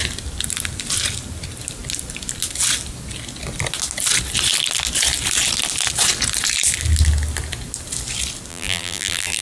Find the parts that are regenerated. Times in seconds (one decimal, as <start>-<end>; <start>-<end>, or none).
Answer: 8.5-9.4